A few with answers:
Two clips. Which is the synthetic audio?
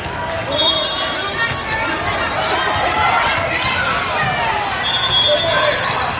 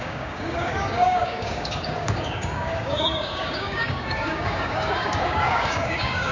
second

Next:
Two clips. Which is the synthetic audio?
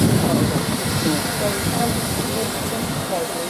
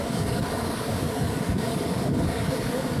second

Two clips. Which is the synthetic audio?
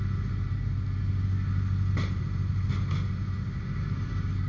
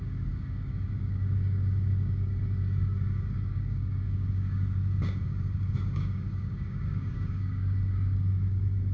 second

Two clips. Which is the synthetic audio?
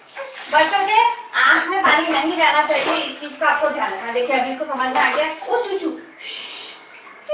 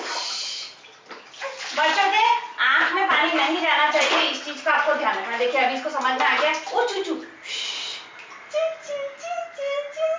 first